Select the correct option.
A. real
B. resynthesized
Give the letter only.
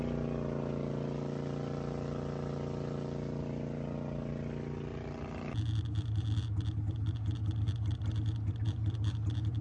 A